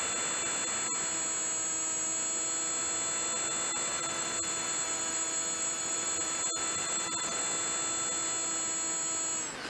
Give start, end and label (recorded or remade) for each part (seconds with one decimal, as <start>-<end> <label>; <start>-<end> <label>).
0.0-3.9 recorded; 3.9-7.4 remade; 7.4-9.7 recorded